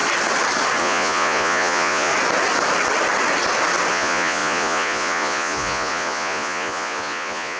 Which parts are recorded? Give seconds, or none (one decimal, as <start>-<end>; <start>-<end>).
0.0-0.8; 2.1-3.9